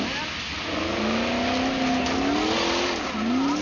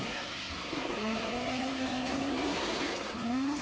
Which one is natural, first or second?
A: first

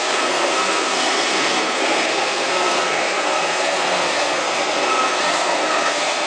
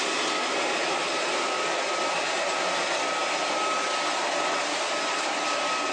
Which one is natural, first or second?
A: second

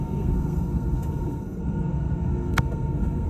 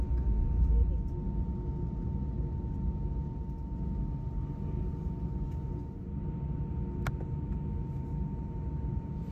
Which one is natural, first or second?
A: second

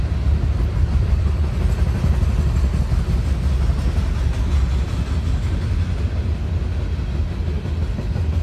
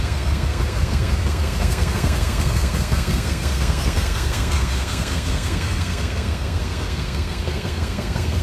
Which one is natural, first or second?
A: first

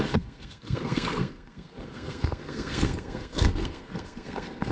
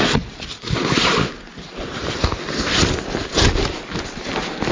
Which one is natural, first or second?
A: second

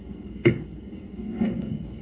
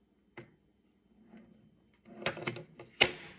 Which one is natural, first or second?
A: second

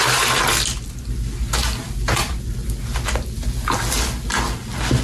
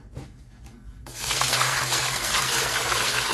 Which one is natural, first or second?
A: first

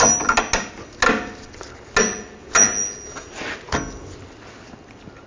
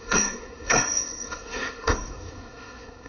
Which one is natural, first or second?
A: first